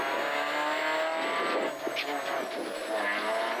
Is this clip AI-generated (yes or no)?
no